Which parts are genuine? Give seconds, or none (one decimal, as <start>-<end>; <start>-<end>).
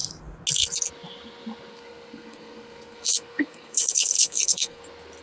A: 0.0-1.7; 4.8-5.2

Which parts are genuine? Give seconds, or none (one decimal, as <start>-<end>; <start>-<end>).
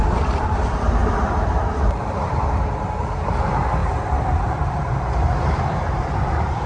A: none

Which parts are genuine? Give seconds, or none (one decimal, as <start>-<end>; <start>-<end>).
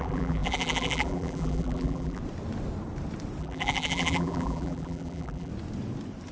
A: 2.2-3.4; 5.5-6.3